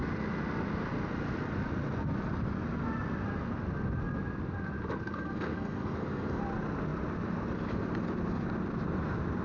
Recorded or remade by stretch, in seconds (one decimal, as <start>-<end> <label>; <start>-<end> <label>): 0.0-5.0 recorded; 5.0-6.4 remade; 6.4-9.4 recorded